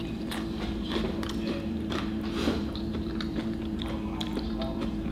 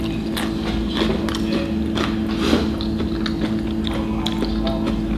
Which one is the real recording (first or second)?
second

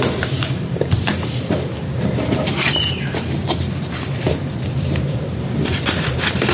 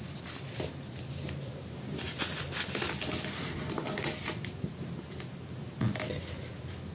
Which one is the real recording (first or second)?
second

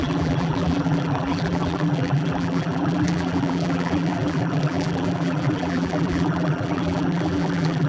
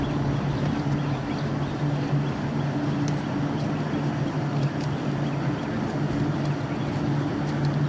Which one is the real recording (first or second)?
second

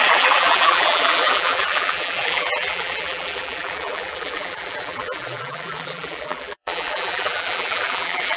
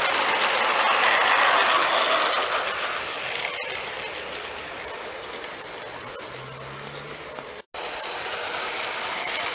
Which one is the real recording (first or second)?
second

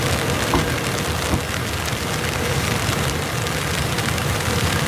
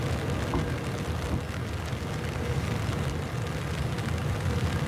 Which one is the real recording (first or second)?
second